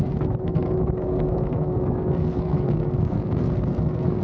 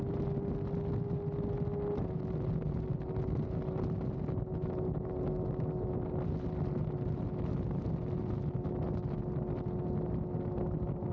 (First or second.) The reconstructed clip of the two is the first